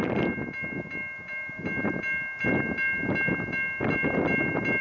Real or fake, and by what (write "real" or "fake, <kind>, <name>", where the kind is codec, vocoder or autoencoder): real